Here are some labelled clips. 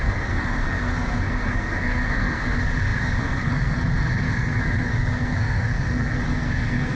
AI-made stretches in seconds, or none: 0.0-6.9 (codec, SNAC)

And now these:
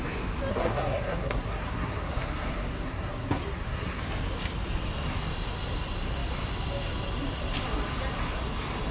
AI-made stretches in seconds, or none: 0.5-4.0 (codec, SNAC)

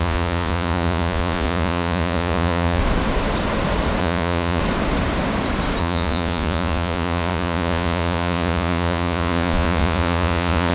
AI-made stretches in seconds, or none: 0.0-2.8 (vocoder, Vocos); 4.0-4.6; 5.8-10.7

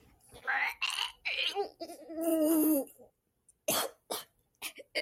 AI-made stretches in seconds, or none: 2.3-3.3 (vocoder, BigVGAN v2)

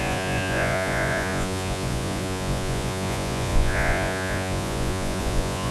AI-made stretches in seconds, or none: 0.0-5.7 (vocoder, Vocos)

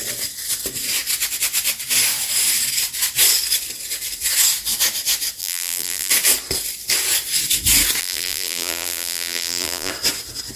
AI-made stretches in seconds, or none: 5.4-6.1 (vocoder, BigVGAN v2); 8.0-9.9

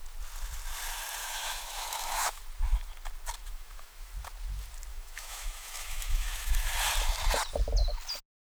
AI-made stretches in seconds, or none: 1.2-2.4 (autoencoder, DAC-VAE); 3.4-4.1; 4.9-6.7